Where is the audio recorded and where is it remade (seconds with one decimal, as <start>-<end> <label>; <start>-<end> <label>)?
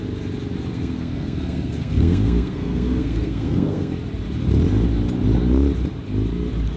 0.0-0.7 recorded; 0.7-3.9 remade; 3.9-6.8 recorded